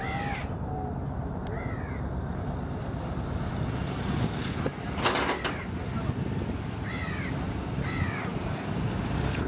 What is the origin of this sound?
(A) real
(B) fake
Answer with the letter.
A